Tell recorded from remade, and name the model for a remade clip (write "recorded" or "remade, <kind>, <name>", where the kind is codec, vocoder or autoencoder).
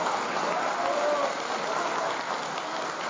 recorded